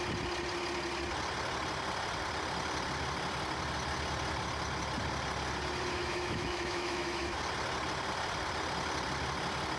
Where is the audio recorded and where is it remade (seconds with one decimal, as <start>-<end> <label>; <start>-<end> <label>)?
0.0-6.0 recorded; 6.0-7.4 remade; 7.4-9.8 recorded